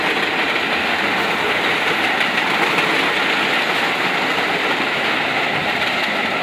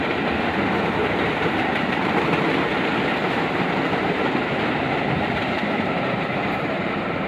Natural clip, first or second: first